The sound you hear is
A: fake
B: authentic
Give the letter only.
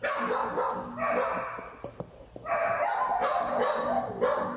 B